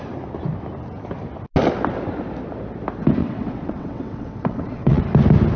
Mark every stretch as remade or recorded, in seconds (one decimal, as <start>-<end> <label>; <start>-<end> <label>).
0.0-3.2 recorded; 3.2-5.0 remade; 5.0-5.6 recorded